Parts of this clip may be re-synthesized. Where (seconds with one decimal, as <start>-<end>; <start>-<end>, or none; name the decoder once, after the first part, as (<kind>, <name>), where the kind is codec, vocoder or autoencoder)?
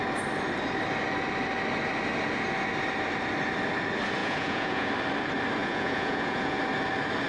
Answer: 4.2-4.9 (vocoder, Vocos); 5.6-6.6